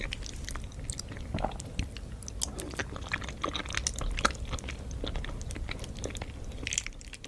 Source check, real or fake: real